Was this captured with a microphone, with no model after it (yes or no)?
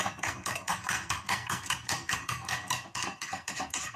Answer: no